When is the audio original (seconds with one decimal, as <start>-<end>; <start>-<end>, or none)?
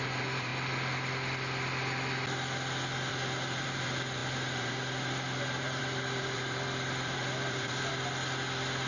0.5-3.1; 7.9-8.9